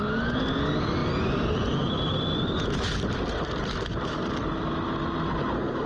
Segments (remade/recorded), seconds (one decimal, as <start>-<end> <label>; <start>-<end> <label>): 0.0-5.9 recorded